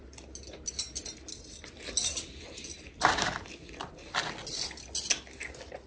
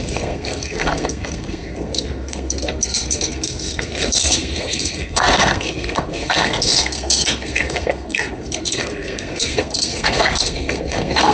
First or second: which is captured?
first